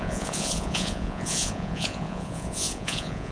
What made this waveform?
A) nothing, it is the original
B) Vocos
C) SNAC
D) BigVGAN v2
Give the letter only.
B